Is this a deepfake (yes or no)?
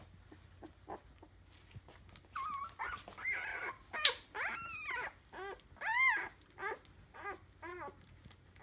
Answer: no